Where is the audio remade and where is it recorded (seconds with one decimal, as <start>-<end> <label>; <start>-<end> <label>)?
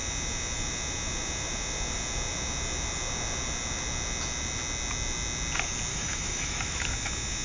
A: 0.0-5.9 recorded; 5.9-6.9 remade; 6.9-7.4 recorded